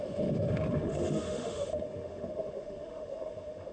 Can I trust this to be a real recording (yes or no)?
no